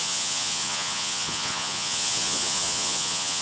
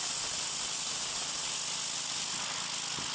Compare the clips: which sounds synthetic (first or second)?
first